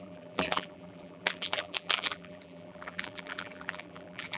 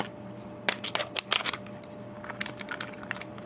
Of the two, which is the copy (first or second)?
first